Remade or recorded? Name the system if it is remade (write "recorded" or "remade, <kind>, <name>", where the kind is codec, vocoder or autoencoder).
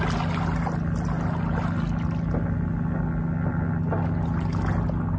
recorded